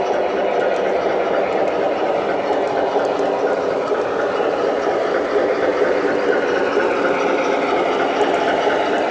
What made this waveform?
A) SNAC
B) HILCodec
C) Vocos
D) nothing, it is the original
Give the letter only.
D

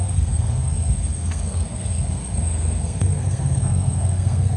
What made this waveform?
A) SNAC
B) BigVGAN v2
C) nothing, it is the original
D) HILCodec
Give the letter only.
A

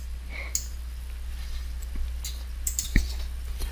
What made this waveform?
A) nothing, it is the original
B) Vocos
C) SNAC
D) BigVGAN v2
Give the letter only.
A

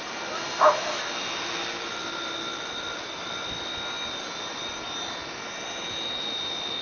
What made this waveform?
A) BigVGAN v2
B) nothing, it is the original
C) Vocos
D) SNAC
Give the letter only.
B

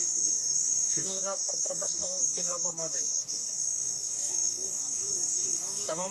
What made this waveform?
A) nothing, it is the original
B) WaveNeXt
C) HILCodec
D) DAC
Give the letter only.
D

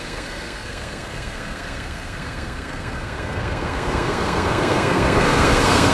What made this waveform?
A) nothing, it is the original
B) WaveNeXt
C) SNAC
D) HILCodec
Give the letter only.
C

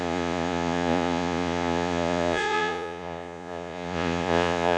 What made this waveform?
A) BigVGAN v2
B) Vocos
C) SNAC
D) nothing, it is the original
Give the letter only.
B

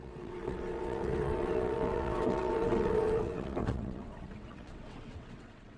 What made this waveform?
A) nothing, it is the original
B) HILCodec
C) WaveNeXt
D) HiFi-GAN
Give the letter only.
C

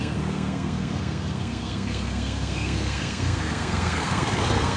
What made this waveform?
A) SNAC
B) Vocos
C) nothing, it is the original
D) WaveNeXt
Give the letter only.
A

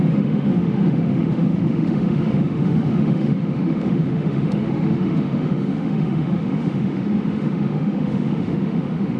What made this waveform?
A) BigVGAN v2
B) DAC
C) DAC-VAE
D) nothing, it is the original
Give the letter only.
C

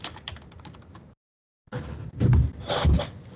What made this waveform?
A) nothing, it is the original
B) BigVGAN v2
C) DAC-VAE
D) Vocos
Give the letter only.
A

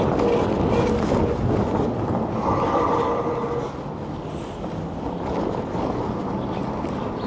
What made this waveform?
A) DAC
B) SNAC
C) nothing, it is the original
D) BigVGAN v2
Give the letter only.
C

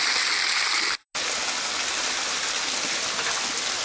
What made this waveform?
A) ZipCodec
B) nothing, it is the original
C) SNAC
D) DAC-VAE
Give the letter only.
B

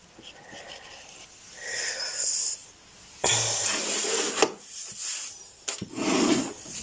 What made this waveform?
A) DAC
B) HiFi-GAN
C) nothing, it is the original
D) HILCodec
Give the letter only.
C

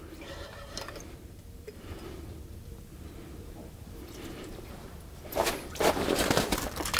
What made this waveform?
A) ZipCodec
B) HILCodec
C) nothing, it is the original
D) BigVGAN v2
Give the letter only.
D